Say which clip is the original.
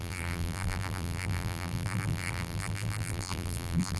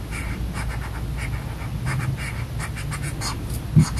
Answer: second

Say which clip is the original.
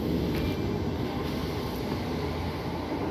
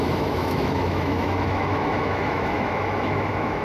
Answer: first